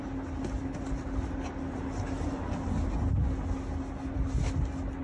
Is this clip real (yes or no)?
yes